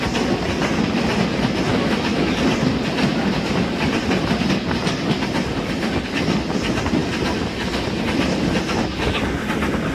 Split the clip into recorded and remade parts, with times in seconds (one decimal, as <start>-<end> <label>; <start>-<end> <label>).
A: 0.0-1.7 recorded; 1.7-2.3 remade; 2.3-9.9 recorded